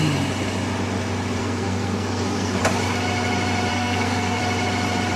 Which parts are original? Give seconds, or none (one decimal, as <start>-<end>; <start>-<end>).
0.0-1.4; 2.6-3.7; 4.4-5.2